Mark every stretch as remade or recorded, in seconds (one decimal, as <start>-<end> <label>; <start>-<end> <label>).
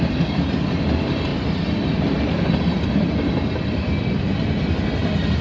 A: 0.0-5.4 recorded